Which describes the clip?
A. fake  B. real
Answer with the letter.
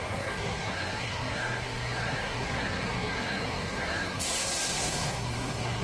A